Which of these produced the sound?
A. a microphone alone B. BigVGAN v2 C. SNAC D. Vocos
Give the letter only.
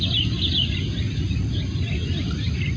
A